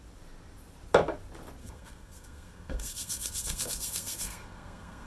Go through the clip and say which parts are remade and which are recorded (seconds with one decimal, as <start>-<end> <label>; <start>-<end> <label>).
0.0-1.6 recorded; 1.6-5.1 remade